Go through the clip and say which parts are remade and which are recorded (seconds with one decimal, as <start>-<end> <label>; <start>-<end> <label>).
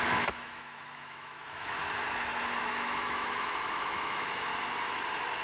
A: 0.0-1.8 remade; 1.8-2.6 recorded; 2.6-4.5 remade; 4.5-5.4 recorded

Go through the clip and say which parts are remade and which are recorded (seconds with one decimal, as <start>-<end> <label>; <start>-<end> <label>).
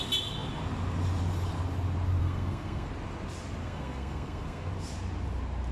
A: 0.0-2.2 recorded; 2.2-2.9 remade; 2.9-3.6 recorded; 3.6-4.7 remade; 4.7-5.7 recorded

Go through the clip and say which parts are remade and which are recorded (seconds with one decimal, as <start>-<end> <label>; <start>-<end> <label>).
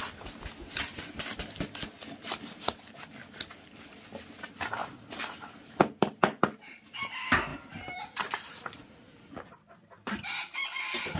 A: 0.0-4.8 recorded; 4.8-6.8 remade; 6.8-7.5 recorded; 7.5-11.2 remade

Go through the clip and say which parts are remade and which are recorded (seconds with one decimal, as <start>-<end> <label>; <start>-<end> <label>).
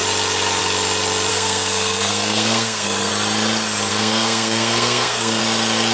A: 0.0-1.3 recorded; 1.3-3.1 remade; 3.1-3.9 recorded; 3.9-5.4 remade; 5.4-5.9 recorded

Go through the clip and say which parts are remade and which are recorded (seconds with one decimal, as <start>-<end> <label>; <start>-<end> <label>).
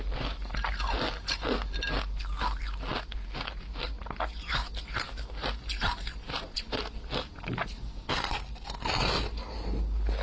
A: 0.0-10.2 recorded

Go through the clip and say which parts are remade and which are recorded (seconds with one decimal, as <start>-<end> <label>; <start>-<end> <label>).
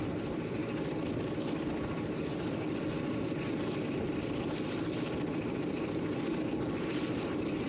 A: 0.0-0.6 remade; 0.6-3.9 recorded; 3.9-7.7 remade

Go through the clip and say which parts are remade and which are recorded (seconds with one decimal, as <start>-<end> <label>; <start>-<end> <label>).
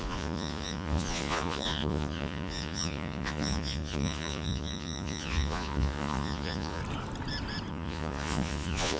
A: 0.0-6.8 remade; 6.8-7.7 recorded; 7.7-9.0 remade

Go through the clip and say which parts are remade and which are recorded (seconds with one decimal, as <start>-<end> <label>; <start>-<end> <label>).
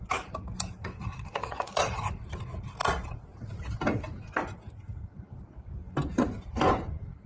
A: 0.0-0.8 recorded; 0.8-2.1 remade; 2.1-7.3 recorded